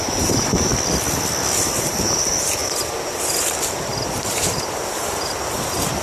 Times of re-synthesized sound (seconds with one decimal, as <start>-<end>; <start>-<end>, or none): 0.0-0.7; 1.8-6.0